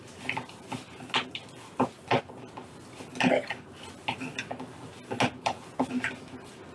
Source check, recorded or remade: recorded